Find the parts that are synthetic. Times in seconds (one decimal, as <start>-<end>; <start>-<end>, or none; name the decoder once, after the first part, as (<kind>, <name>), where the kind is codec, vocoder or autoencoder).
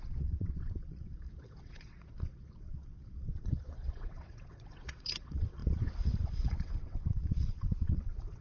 0.0-8.4 (vocoder, WaveNeXt)